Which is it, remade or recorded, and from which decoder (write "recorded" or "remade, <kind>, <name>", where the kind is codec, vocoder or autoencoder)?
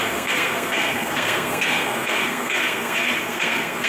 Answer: remade, codec, SNAC